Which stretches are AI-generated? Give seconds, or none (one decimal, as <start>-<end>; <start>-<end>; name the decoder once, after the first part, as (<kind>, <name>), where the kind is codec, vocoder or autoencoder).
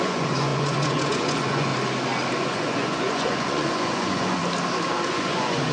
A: 0.0-1.7 (vocoder, Vocos); 2.4-4.4; 5.1-5.7